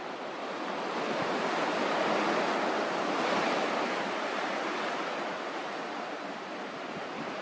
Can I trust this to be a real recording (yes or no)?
yes